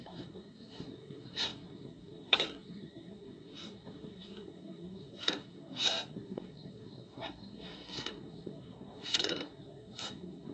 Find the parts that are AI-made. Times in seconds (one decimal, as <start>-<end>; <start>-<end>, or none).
0.0-10.5